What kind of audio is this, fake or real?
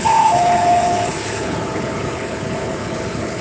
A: fake